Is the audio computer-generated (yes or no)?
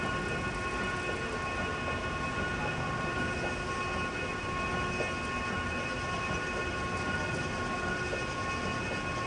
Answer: no